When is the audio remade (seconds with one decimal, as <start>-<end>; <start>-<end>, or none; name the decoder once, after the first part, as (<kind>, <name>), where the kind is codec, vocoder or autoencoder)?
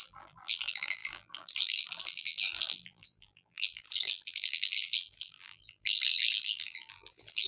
0.0-7.5 (vocoder, BigVGAN v2)